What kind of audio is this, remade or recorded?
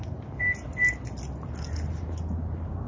recorded